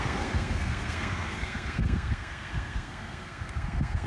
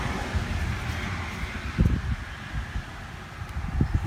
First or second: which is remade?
first